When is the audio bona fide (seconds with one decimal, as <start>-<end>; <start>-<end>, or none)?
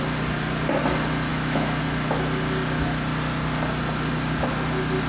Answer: 0.0-1.3; 1.8-5.1